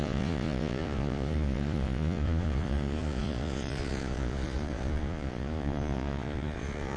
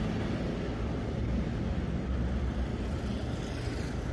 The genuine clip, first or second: second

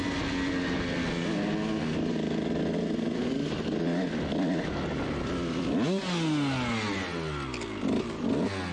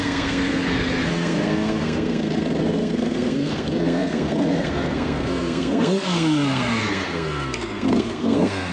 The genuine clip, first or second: first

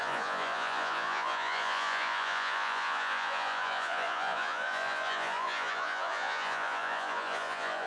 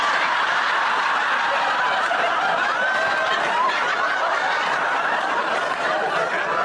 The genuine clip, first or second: second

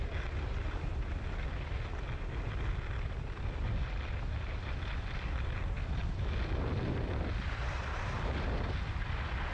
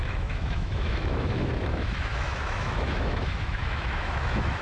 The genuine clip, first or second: first